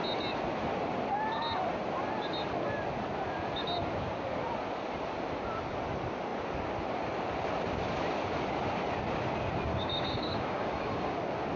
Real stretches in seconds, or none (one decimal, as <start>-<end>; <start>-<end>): 0.0-9.7; 11.2-11.6